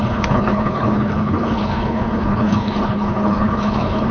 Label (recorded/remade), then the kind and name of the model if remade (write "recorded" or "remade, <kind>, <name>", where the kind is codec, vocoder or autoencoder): remade, codec, HILCodec